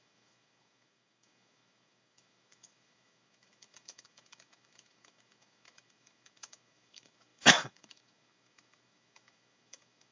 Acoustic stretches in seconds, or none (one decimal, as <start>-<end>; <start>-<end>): none